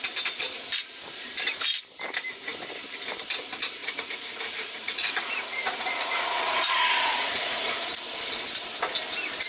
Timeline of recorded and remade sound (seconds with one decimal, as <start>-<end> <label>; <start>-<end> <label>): 0.0-3.8 recorded; 3.8-8.0 remade; 8.0-9.5 recorded